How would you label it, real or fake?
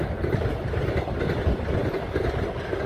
real